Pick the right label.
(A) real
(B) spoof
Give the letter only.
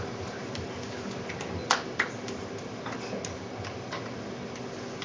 A